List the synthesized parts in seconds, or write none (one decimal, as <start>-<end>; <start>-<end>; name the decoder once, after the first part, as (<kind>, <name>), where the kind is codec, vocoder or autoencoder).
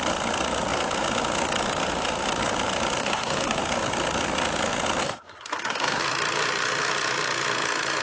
3.0-3.6 (codec, SNAC); 5.0-6.0